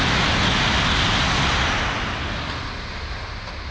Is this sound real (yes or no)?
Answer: yes